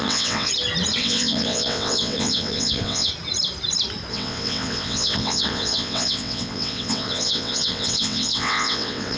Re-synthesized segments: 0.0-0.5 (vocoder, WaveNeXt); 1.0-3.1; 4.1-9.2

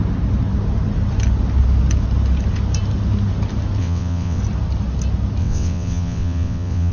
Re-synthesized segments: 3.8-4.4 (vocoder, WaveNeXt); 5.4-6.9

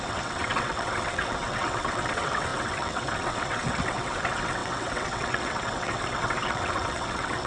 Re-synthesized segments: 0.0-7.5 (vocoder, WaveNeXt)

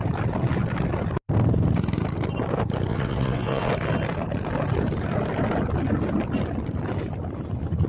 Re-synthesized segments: 2.9-3.7 (vocoder, WaveNeXt)

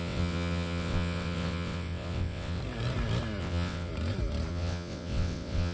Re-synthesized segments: 0.0-2.6 (vocoder, WaveNeXt); 3.4-3.9; 4.5-5.7